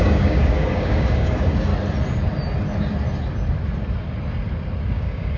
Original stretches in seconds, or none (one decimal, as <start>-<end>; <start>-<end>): 1.7-4.9